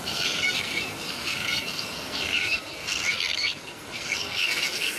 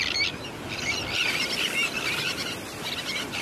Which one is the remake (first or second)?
first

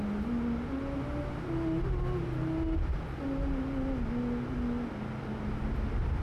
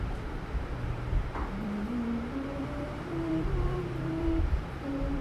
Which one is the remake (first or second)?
second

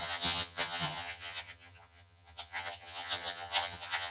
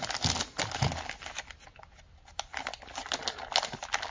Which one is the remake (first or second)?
first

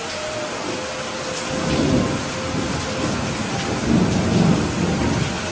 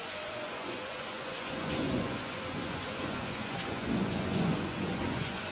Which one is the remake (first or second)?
second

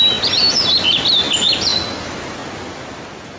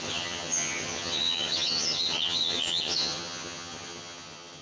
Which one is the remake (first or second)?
second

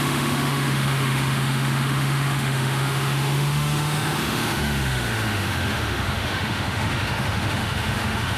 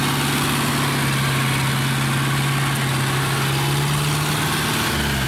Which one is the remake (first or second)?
first